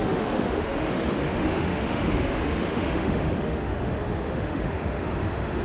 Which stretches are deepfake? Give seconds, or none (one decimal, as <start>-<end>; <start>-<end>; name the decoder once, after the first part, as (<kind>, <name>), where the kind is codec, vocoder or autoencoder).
0.0-5.6 (autoencoder, DAC-VAE)